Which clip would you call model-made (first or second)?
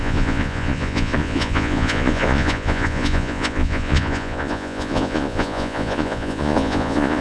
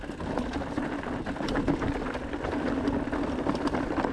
first